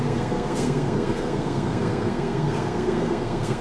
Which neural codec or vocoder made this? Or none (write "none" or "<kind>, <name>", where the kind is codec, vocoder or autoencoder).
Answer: codec, SNAC